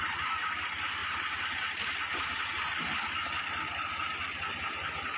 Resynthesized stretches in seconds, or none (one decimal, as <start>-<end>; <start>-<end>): none